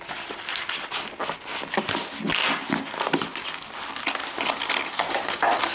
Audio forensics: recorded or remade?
recorded